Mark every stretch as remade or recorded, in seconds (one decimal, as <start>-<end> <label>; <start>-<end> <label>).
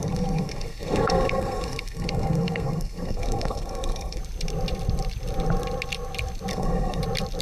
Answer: 0.0-4.2 remade; 4.2-6.5 recorded; 6.5-7.0 remade; 7.0-7.4 recorded